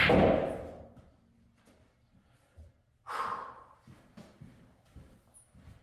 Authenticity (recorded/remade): recorded